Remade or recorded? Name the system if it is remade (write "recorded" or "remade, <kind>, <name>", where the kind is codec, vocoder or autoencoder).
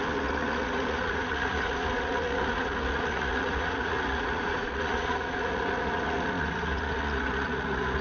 remade, vocoder, Vocos